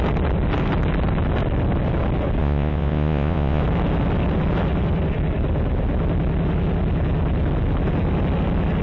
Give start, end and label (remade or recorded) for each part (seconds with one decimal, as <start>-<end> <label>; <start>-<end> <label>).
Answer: 0.0-2.4 recorded; 2.4-3.6 remade; 3.6-8.8 recorded